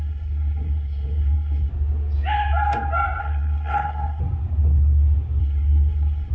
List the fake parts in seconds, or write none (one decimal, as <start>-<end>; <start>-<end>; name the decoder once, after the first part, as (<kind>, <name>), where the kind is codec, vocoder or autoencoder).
0.0-1.7 (codec, SNAC); 3.2-4.2; 5.4-6.3